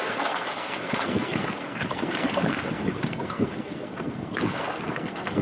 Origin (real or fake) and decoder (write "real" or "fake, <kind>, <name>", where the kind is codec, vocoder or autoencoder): fake, codec, SNAC